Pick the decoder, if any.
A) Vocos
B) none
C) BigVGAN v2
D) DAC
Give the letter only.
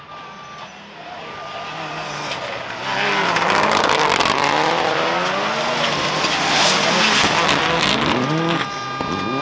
B